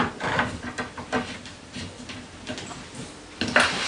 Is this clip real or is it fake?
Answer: real